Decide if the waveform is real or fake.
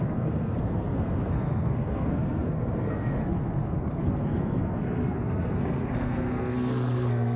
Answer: fake